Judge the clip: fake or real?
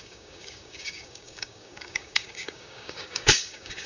fake